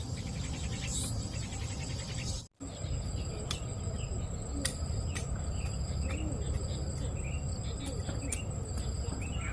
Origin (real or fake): real